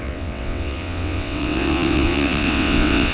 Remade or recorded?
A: remade